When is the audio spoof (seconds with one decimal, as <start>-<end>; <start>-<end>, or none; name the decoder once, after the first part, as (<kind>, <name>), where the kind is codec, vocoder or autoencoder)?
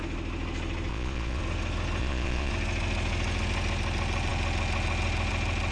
0.9-1.4 (vocoder, Vocos); 2.0-2.5